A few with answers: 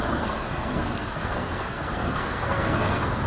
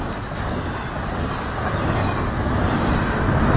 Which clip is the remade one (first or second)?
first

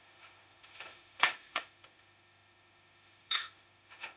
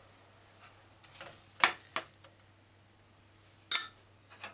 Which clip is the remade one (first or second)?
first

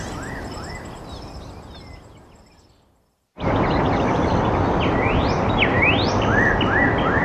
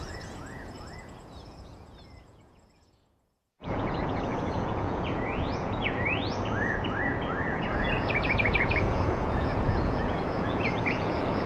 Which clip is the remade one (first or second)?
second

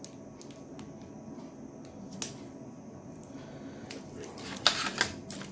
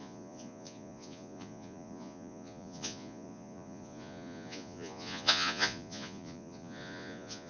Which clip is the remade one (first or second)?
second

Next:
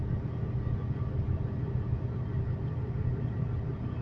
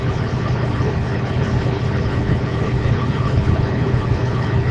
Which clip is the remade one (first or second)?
second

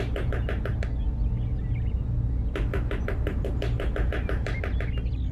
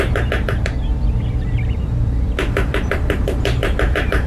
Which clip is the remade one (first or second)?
second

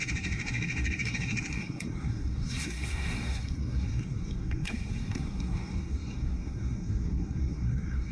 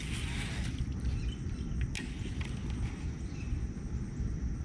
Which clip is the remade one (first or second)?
first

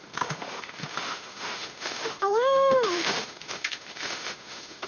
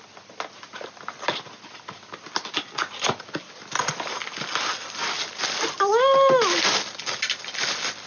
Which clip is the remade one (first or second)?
first